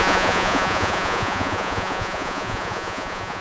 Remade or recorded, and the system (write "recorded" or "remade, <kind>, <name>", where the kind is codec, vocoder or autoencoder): remade, vocoder, Vocos